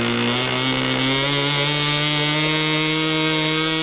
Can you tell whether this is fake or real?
real